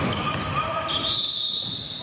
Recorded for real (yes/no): no